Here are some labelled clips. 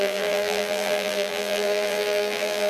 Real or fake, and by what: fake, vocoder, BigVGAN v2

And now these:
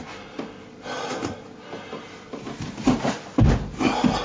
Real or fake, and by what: real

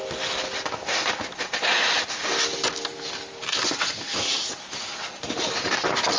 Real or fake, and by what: real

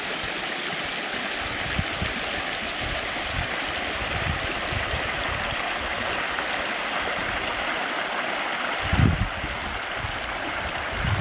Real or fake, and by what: real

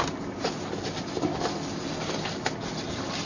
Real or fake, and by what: real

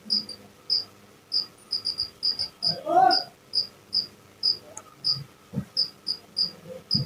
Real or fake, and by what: real